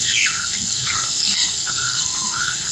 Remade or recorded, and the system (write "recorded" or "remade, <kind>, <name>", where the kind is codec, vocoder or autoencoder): remade, codec, SNAC